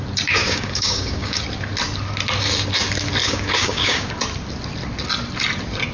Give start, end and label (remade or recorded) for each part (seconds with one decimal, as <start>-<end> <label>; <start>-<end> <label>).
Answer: 0.0-0.4 recorded; 0.4-1.4 remade; 1.4-3.2 recorded; 3.2-4.1 remade; 4.1-5.9 recorded